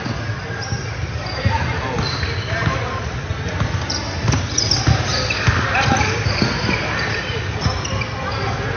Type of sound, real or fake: real